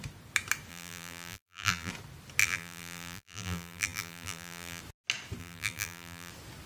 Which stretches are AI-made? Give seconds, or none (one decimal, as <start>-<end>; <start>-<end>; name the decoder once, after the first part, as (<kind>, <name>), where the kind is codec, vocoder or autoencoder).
0.7-1.9 (vocoder, BigVGAN v2); 2.4-4.8; 5.4-6.3